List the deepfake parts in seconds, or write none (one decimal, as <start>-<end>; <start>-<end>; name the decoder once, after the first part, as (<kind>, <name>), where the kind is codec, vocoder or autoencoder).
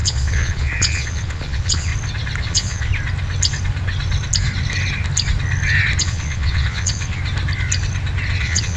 0.0-1.9 (vocoder, Vocos); 2.4-2.9; 6.0-7.2; 8.4-8.8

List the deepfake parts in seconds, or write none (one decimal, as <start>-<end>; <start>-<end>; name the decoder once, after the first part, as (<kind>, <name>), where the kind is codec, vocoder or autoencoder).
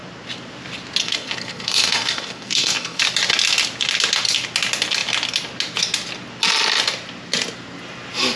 1.0-3.0 (codec, SNAC)